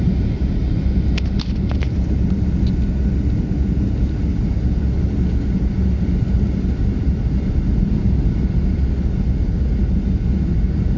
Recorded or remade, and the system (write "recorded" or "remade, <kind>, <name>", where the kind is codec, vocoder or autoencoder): recorded